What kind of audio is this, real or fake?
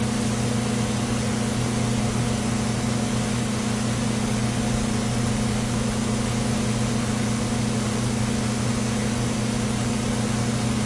real